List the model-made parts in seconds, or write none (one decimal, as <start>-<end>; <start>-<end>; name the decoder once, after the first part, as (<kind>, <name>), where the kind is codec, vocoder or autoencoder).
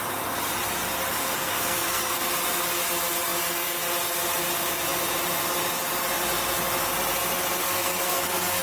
1.2-2.3 (codec, SNAC); 7.6-8.6